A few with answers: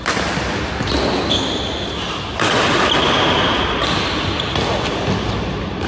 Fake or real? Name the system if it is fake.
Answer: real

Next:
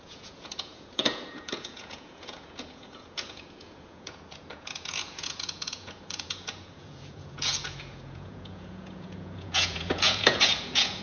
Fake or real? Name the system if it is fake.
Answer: fake, vocoder, Vocos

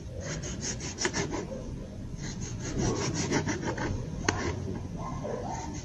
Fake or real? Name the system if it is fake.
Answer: fake, vocoder, Vocos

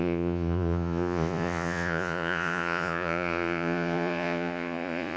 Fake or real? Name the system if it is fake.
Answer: fake, vocoder, Vocos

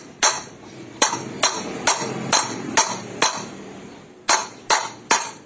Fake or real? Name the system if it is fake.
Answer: real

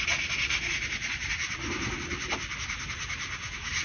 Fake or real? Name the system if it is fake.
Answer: real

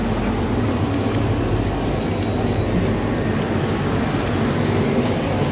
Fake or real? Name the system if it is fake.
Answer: real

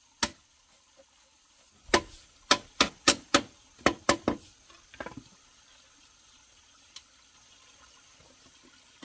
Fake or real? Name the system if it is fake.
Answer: real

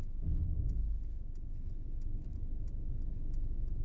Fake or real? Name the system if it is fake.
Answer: real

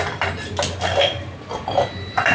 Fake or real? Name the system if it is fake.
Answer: real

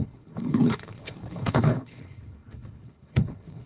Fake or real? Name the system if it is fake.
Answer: fake, codec, HILCodec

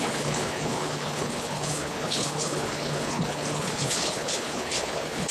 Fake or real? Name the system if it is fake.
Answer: fake, codec, HILCodec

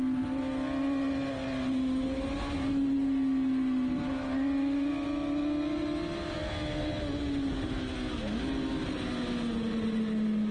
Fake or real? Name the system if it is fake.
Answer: real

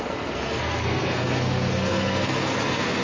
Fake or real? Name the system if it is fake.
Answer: fake, codec, SNAC